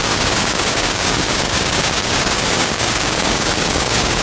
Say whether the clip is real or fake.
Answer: fake